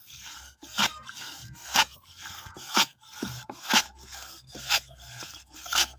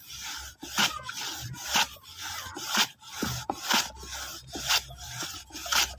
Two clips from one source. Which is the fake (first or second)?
first